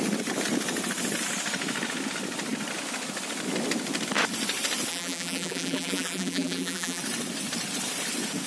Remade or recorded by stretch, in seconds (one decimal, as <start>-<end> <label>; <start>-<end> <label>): 0.0-4.9 recorded; 4.9-7.0 remade; 7.0-8.5 recorded